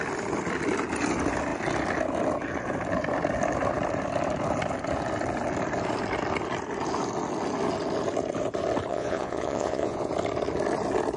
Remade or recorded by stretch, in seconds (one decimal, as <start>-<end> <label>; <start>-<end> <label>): 0.0-8.9 recorded; 8.9-10.1 remade; 10.1-11.2 recorded